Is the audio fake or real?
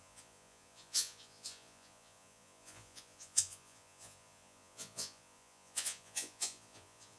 fake